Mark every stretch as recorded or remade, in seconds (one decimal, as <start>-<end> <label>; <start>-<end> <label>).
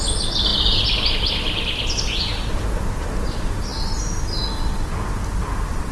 0.0-5.9 recorded